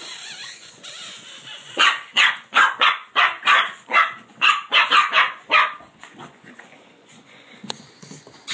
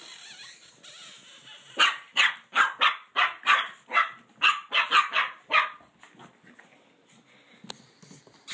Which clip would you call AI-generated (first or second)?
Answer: first